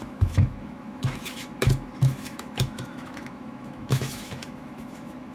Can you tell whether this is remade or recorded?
remade